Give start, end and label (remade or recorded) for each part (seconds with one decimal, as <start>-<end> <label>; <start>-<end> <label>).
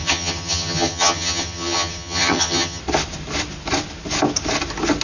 0.0-2.8 remade; 2.8-5.0 recorded